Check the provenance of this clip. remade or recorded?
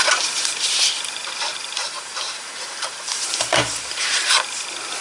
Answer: remade